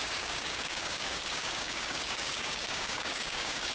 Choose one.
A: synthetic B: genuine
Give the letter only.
A